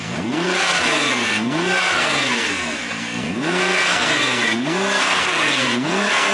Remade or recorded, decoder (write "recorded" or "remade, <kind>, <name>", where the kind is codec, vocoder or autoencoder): remade, codec, SNAC